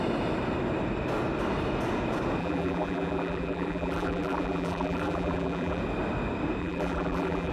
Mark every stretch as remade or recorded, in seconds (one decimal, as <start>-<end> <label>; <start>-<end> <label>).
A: 0.0-2.4 recorded; 2.4-5.8 remade; 5.8-6.6 recorded; 6.6-7.5 remade